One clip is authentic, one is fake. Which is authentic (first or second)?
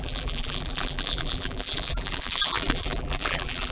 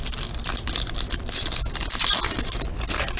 second